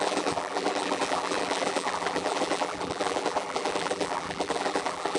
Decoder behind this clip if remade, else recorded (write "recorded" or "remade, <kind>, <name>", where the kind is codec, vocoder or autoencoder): remade, vocoder, BigVGAN v2